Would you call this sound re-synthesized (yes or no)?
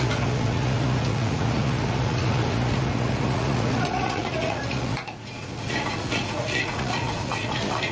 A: yes